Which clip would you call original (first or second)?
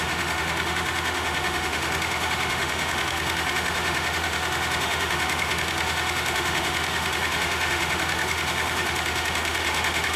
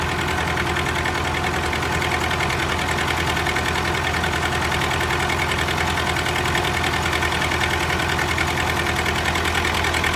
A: second